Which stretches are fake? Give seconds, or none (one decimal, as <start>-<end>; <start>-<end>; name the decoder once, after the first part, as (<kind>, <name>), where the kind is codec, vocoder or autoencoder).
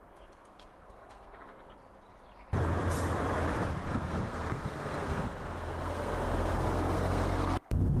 0.0-1.8 (codec, SNAC); 3.9-8.0